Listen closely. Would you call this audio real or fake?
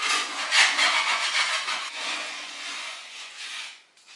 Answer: fake